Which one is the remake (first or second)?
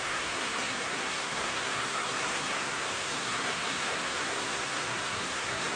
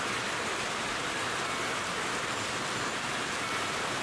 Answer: first